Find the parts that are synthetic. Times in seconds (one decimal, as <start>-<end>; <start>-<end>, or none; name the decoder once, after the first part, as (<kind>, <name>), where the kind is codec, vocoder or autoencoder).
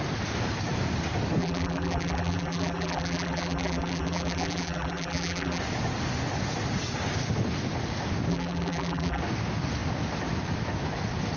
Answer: 1.4-5.6 (vocoder, BigVGAN v2); 8.3-9.2